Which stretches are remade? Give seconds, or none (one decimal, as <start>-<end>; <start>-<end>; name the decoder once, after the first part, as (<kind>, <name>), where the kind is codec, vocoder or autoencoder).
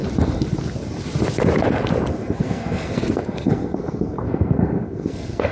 2.1-5.5 (codec, SNAC)